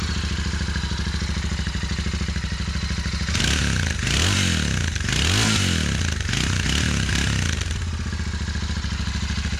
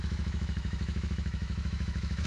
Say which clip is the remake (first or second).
second